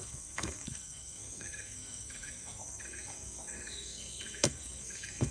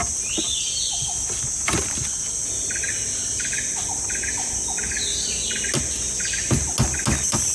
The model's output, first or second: first